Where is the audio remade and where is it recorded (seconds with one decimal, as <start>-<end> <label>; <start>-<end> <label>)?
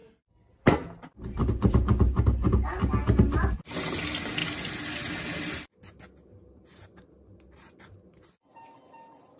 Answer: 0.0-9.4 recorded